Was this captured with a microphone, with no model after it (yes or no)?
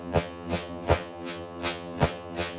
no